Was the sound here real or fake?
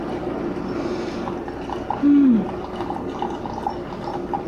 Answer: real